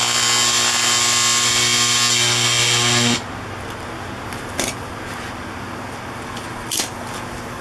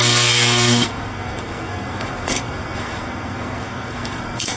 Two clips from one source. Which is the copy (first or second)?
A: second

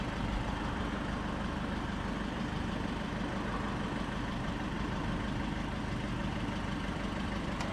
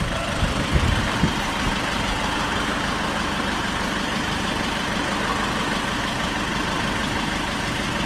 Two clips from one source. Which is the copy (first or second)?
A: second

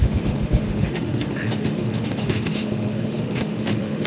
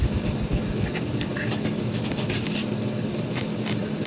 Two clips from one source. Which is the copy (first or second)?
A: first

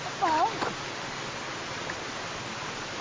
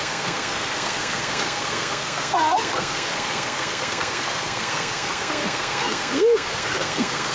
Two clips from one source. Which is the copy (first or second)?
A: second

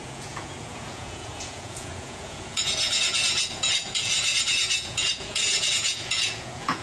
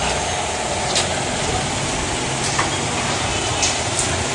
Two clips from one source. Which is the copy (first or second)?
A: first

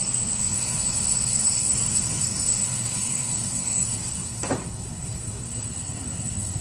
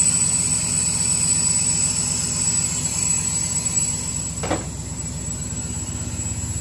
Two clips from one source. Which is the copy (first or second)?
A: first